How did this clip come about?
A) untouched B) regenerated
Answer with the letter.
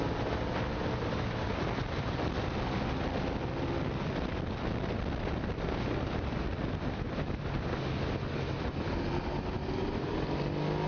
A